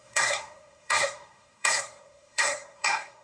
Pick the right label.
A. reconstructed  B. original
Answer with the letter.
A